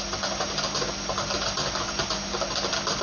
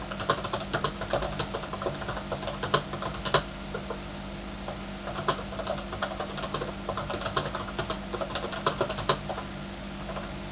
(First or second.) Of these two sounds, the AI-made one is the first